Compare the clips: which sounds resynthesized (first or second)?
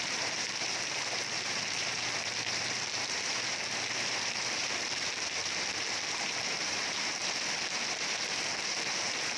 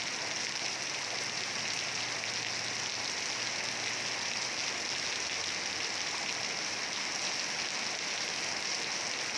first